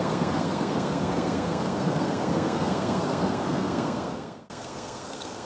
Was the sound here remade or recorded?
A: remade